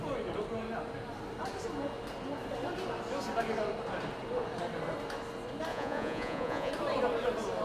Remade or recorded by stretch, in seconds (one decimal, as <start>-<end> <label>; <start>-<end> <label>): 0.0-5.7 recorded; 5.7-6.7 remade; 6.7-7.6 recorded